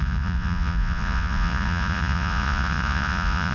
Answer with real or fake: fake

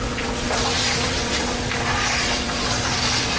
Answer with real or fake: fake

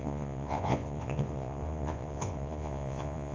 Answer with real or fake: fake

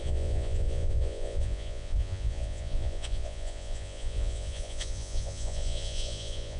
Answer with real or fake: fake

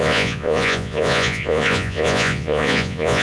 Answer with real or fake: fake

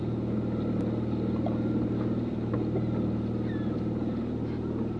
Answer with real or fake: real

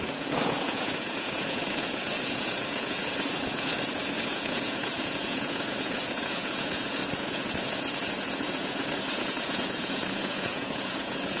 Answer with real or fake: fake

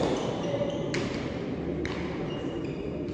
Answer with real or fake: real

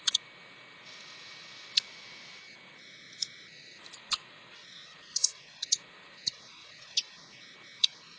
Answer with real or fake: fake